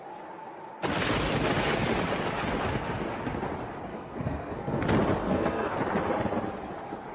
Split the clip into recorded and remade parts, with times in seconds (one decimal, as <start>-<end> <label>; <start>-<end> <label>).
0.0-3.9 recorded; 3.9-4.8 remade; 4.8-5.2 recorded; 5.2-5.8 remade; 5.8-7.1 recorded